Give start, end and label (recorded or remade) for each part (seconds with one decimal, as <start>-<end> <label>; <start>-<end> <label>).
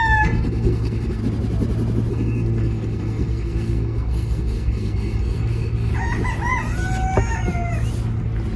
0.0-1.2 remade; 1.2-2.1 recorded; 2.1-5.9 remade; 5.9-8.6 recorded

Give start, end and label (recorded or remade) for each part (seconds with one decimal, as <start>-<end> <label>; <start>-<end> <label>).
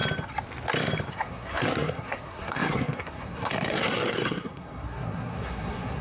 0.0-1.1 recorded; 1.1-6.0 remade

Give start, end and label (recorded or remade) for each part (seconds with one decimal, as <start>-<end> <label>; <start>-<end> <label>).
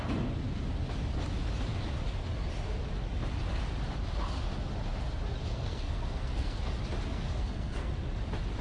0.0-5.5 recorded; 5.5-6.6 remade; 6.6-7.1 recorded; 7.1-7.9 remade; 7.9-8.6 recorded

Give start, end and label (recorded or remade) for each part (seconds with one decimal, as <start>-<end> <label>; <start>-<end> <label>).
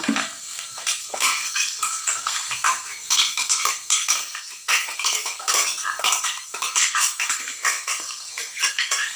0.0-9.2 remade